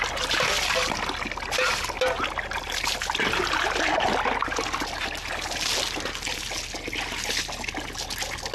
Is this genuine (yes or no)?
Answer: yes